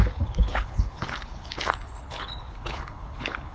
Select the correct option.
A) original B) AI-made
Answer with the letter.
B